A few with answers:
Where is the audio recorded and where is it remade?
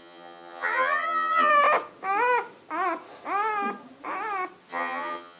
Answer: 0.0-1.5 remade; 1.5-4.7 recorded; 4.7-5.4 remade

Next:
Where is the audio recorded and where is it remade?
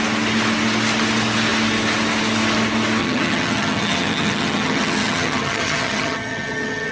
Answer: 0.0-3.0 recorded; 3.0-6.9 remade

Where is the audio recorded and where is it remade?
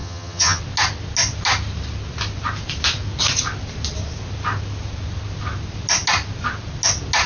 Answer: 0.0-0.6 remade; 0.6-7.3 recorded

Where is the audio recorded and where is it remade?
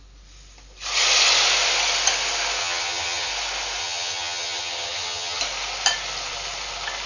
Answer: 0.0-2.6 recorded; 2.6-3.3 remade; 3.3-3.8 recorded; 3.8-5.4 remade; 5.4-7.1 recorded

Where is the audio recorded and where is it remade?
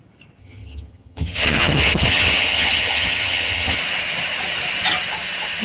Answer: 0.0-0.4 recorded; 0.4-3.8 remade; 3.8-5.6 recorded